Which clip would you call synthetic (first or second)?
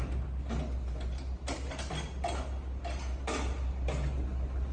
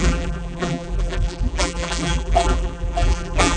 second